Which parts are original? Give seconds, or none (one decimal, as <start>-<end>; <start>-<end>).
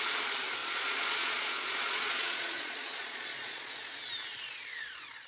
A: 0.0-0.6; 3.8-4.3